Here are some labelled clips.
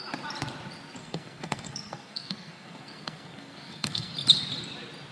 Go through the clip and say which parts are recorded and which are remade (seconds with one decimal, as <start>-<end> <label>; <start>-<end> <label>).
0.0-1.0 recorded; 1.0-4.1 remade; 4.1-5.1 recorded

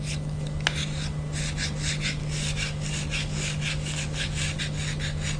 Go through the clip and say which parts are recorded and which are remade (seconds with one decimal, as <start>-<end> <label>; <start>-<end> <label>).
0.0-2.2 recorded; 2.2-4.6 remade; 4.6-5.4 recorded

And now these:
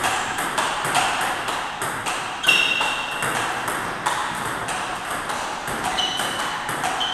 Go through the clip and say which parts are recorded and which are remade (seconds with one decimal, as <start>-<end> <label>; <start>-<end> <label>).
0.0-3.0 remade; 3.0-4.2 recorded; 4.2-4.7 remade; 4.7-5.6 recorded; 5.6-6.4 remade; 6.4-7.1 recorded